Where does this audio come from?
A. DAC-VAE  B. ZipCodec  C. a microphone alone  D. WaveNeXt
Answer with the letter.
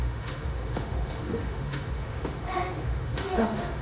A